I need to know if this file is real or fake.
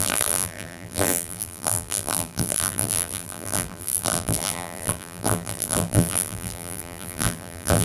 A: fake